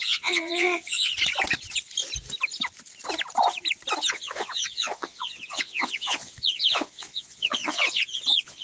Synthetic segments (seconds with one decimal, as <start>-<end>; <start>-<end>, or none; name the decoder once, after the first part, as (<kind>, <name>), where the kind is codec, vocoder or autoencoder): 0.0-1.1 (vocoder, Vocos); 4.1-8.6